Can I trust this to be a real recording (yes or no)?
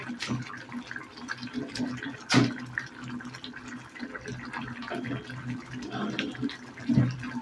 yes